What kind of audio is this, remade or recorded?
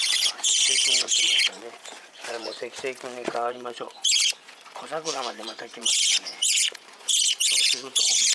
remade